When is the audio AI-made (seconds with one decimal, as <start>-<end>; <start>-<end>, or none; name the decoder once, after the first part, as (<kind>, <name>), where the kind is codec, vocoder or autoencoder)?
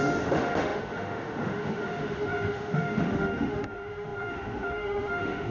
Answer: 0.0-5.5 (autoencoder, DAC-VAE)